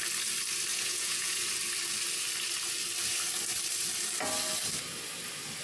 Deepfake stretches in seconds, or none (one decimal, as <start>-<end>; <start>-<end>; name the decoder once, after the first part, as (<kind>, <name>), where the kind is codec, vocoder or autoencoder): 0.7-1.4 (vocoder, Vocos)